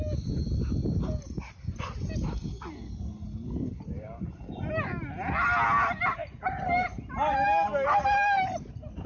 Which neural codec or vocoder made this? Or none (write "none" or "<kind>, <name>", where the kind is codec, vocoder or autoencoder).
none